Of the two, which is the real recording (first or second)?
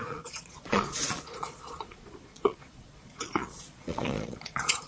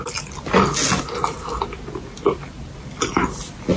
second